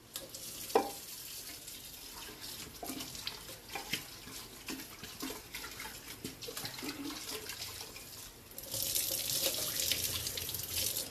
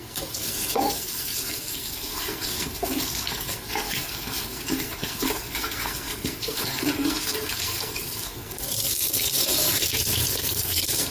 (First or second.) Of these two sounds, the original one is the first